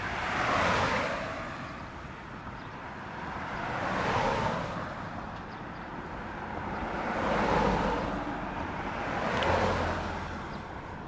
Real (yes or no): no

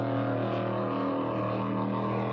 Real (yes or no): yes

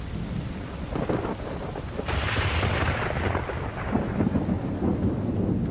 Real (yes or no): yes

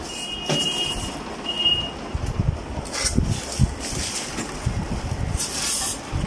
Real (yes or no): yes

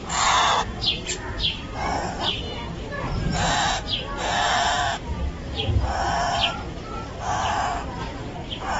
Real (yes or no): yes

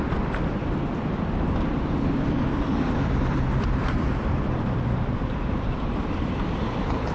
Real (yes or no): no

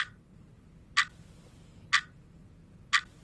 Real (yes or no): yes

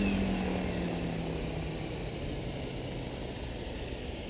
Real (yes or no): yes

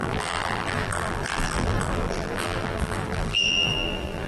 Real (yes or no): no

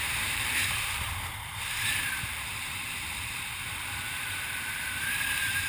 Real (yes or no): no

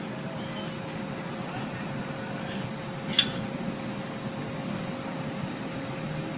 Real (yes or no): yes